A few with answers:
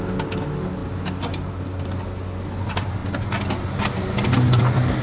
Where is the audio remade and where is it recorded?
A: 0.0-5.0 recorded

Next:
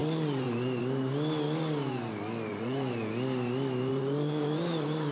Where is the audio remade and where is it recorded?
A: 0.0-0.8 remade; 0.8-2.5 recorded; 2.5-3.1 remade; 3.1-3.9 recorded; 3.9-5.1 remade

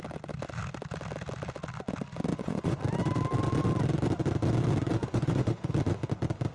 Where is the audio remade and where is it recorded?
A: 0.0-2.3 recorded; 2.3-2.8 remade; 2.8-5.0 recorded; 5.0-5.7 remade; 5.7-6.5 recorded

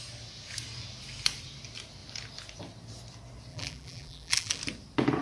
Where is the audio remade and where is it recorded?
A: 0.0-3.5 recorded; 3.5-4.6 remade; 4.6-5.2 recorded

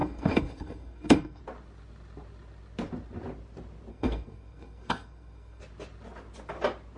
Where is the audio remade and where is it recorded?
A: 0.0-1.4 remade; 1.4-3.9 recorded; 3.9-5.6 remade; 5.6-7.0 recorded

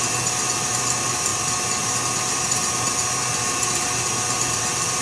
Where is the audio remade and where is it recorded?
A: 0.0-5.0 recorded